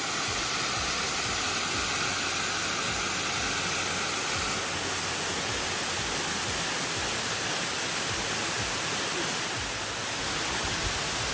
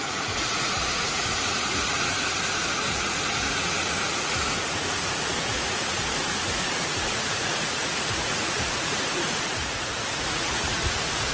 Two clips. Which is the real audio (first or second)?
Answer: first